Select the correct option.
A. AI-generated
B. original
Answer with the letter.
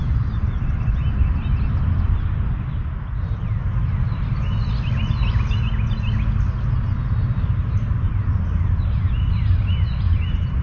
B